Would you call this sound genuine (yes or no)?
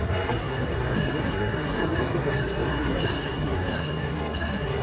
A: no